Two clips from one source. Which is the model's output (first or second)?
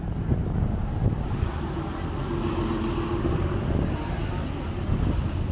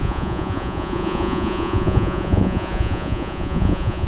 second